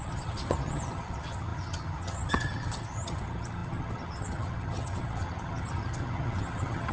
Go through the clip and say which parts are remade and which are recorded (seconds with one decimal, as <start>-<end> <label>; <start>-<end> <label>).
0.0-6.9 remade